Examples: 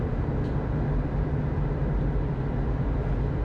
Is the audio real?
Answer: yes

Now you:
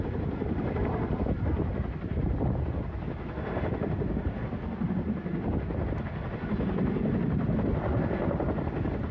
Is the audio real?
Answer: yes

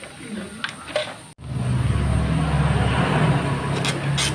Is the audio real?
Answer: yes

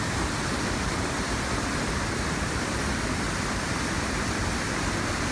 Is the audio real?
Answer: yes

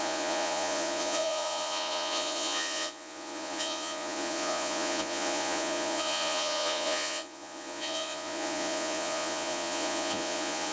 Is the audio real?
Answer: no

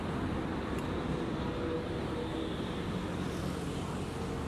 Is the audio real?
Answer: yes